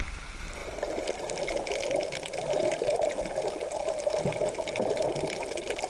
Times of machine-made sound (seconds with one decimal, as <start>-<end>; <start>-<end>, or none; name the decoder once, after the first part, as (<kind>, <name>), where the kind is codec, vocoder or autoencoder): none